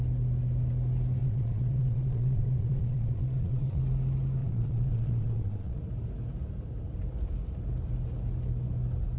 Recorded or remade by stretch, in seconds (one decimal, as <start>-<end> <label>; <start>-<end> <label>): 0.0-1.2 recorded; 1.2-3.8 remade; 3.8-4.4 recorded; 4.4-5.8 remade; 5.8-9.2 recorded